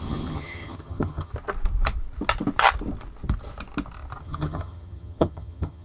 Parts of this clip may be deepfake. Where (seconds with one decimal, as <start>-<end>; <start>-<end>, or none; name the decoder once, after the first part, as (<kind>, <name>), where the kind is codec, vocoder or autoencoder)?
0.0-1.3 (vocoder, HiFi-GAN); 4.2-5.8